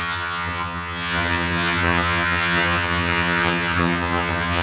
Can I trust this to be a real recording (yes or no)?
no